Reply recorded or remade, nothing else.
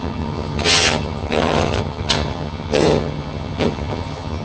remade